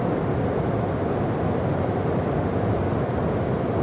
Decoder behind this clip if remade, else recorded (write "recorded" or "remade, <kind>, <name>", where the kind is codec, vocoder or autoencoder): recorded